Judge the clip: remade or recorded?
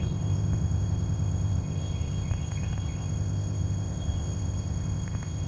remade